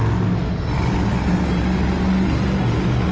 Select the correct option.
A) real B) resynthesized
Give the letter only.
A